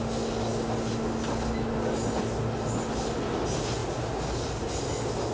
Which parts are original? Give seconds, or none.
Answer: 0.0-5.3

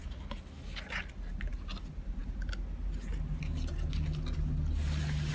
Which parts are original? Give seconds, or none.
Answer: 0.0-5.3